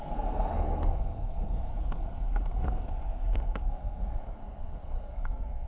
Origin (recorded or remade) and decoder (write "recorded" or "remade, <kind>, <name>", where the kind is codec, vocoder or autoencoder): remade, codec, SNAC